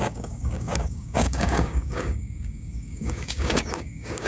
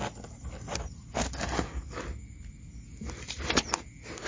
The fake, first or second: first